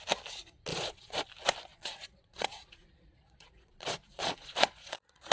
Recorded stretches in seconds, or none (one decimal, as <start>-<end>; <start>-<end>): 0.0-0.7; 1.2-1.7